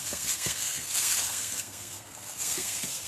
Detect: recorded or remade remade